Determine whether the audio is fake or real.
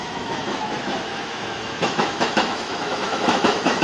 fake